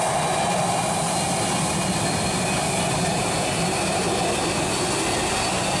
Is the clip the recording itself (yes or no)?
yes